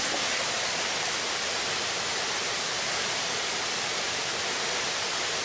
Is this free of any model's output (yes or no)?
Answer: yes